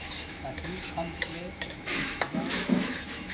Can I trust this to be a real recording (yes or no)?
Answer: no